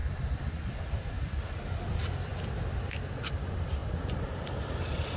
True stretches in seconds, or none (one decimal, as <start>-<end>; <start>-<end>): 0.0-3.8